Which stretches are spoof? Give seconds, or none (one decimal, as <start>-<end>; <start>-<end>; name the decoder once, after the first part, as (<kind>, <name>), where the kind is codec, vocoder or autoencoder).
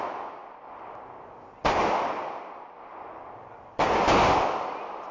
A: none